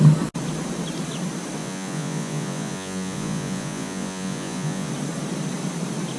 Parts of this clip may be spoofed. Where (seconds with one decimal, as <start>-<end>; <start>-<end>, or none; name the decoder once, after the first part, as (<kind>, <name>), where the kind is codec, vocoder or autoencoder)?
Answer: 1.6-4.9 (vocoder, Vocos)